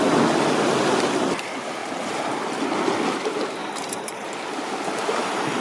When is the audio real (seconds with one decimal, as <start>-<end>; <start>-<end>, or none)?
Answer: 0.0-1.8; 2.6-3.6